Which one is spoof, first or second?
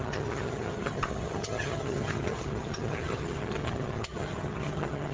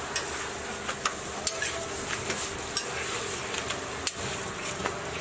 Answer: first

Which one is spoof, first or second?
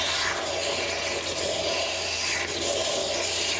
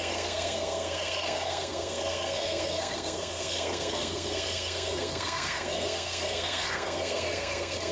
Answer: second